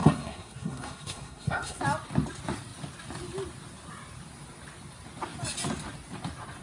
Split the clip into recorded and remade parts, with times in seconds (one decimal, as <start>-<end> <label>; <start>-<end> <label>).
0.0-1.8 remade; 1.8-6.6 recorded